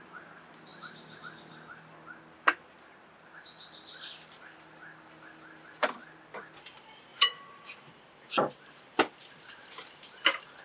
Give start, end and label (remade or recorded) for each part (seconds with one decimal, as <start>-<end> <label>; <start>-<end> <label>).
0.0-7.1 recorded; 7.1-7.9 remade; 7.9-10.6 recorded